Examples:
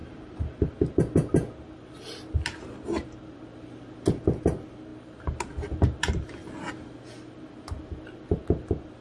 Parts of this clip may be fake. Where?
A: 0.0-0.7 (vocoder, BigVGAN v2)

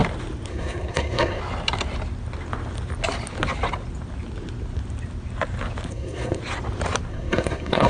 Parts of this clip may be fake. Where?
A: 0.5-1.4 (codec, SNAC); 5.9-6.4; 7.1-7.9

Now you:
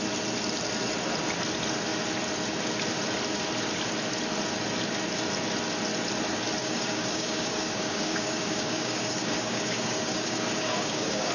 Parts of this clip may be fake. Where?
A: 6.6-11.3 (codec, DAC)

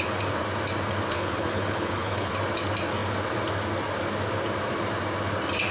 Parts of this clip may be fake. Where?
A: 1.1-2.3 (codec, HILCodec)

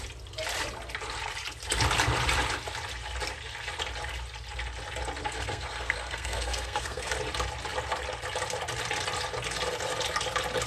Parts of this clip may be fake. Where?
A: 5.2-7.1 (codec, SNAC)